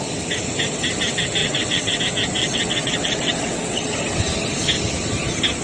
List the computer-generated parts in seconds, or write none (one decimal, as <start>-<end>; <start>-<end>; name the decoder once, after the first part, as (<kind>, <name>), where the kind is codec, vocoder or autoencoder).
1.4-2.0 (vocoder, WaveNeXt); 2.4-3.9